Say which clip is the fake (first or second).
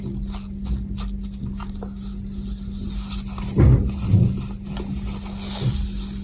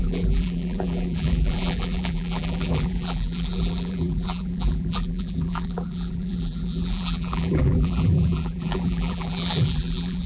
second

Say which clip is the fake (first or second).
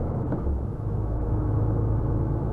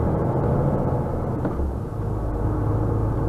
first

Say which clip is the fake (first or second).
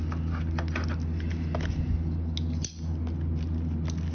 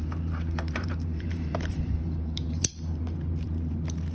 second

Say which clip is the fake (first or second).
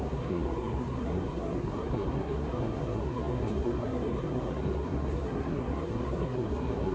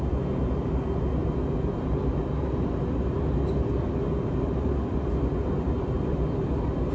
first